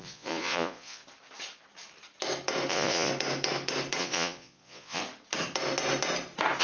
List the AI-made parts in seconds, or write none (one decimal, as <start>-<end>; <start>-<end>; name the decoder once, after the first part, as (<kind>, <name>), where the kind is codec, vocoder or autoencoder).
0.0-1.0 (vocoder, Vocos); 2.7-3.1; 4.0-5.0